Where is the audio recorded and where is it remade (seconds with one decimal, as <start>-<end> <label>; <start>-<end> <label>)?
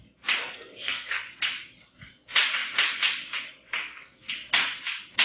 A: 0.0-0.4 recorded; 0.4-1.2 remade; 1.2-3.8 recorded; 3.8-4.3 remade; 4.3-5.2 recorded